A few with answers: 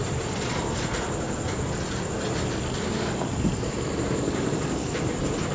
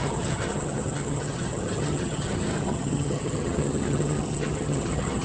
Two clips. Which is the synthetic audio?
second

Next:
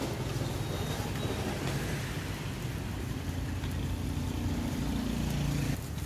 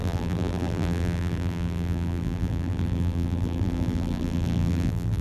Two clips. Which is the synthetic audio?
second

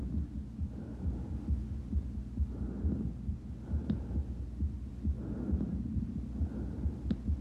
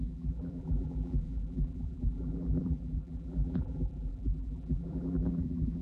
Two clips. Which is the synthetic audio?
second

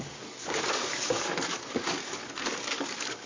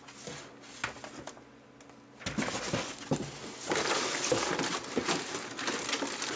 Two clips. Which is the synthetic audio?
first